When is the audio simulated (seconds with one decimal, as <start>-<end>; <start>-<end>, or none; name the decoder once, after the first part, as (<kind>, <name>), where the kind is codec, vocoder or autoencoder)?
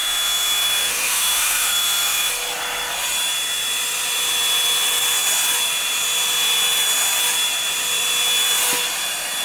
0.0-2.3 (autoencoder, DAC-VAE)